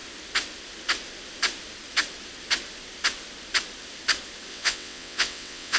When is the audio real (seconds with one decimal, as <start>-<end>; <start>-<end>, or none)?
0.0-4.5